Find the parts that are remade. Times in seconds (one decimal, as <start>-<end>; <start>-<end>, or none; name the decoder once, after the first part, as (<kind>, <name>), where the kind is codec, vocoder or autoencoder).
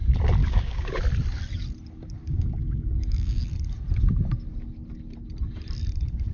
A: 0.4-1.0 (codec, DAC); 2.2-3.4